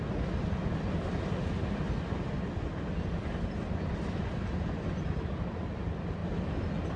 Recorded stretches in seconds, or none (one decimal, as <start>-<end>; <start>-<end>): 0.0-7.0